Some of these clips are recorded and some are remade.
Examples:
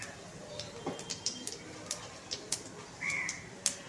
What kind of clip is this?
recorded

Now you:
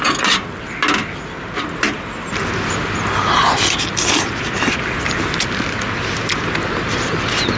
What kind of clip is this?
recorded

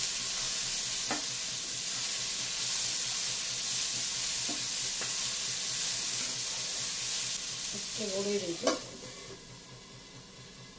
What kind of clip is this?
recorded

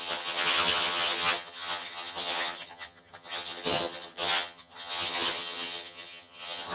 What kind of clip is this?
remade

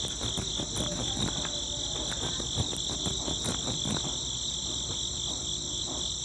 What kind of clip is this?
recorded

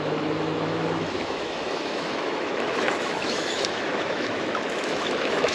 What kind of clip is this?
remade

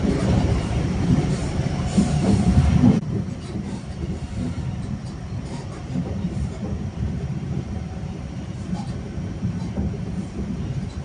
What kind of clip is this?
remade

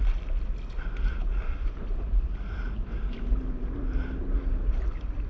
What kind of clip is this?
recorded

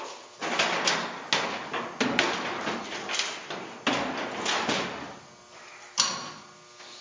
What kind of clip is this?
recorded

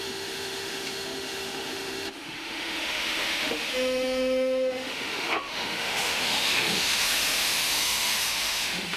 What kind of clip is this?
remade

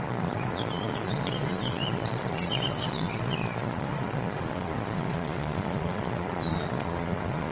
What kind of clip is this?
remade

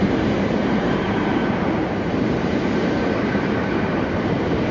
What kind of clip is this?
remade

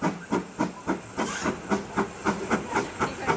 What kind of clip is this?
recorded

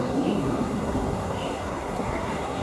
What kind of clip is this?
remade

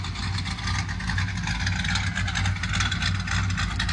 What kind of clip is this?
recorded